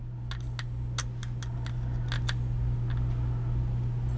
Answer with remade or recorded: recorded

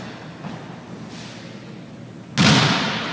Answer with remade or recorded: recorded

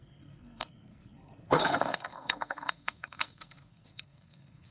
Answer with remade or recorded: remade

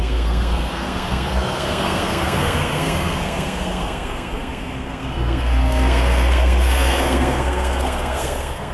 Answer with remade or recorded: remade